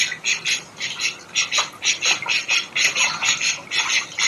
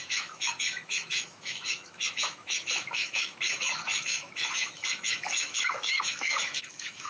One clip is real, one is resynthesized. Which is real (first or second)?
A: first